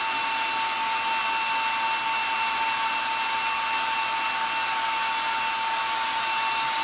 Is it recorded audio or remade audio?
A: recorded